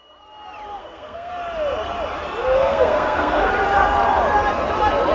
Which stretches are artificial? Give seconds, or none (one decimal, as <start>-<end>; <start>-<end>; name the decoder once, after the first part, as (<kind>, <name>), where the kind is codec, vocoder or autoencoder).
0.8-1.3 (codec, SNAC); 2.4-3.5